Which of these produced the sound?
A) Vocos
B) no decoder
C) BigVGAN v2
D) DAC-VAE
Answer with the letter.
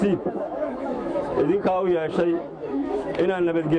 D